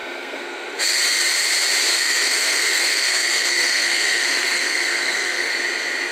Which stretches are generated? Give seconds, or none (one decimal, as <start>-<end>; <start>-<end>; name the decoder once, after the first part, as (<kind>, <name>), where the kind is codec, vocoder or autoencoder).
0.0-1.0 (codec, SNAC); 1.9-5.5